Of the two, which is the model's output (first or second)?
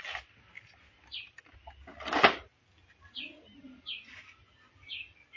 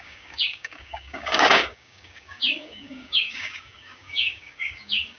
second